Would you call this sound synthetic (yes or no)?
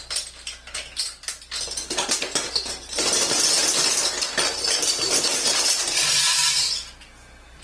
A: no